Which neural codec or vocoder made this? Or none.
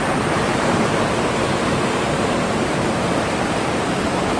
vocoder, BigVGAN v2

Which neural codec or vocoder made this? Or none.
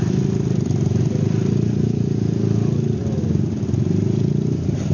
none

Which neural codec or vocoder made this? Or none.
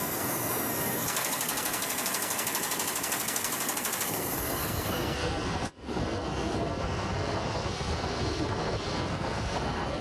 codec, SNAC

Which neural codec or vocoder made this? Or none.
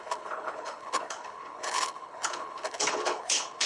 codec, HILCodec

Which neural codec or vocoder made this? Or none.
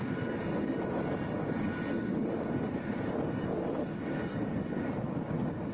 none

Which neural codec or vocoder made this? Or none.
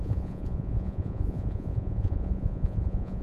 vocoder, Vocos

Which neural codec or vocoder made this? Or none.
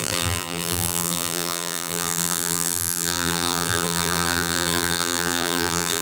vocoder, BigVGAN v2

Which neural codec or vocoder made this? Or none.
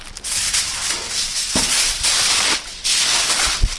none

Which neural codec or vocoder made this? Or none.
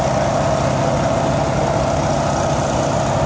none